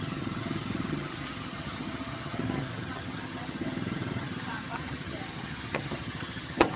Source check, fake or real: fake